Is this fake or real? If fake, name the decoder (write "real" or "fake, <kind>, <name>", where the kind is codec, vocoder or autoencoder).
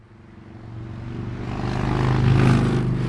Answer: real